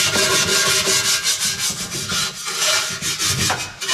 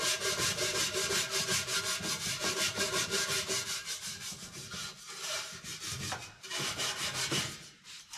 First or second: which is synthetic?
second